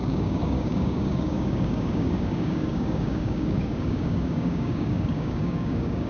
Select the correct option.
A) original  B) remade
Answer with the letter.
B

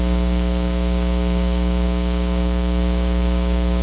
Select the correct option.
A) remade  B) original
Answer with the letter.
A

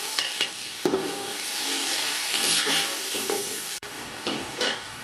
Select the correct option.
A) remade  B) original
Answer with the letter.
A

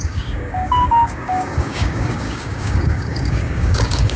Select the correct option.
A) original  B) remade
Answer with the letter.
B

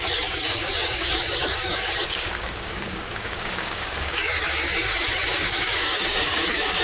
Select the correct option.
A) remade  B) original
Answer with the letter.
A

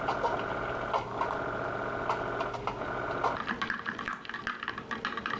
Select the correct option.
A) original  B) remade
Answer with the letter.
A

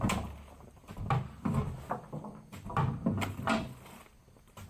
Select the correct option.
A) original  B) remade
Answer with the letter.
A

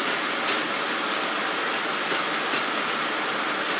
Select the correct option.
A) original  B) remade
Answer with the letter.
A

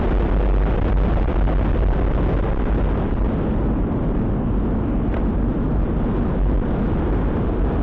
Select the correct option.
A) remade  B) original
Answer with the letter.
B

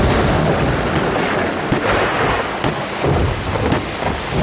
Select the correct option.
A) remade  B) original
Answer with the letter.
B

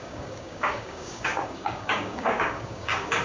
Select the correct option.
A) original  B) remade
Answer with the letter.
B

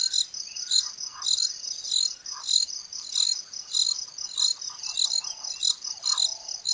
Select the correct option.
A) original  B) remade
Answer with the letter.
A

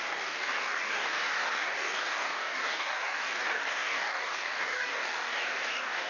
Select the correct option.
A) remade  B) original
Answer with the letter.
A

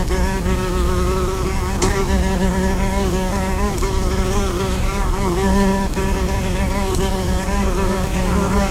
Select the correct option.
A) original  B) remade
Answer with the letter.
B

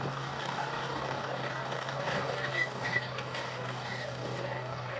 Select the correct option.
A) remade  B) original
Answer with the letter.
A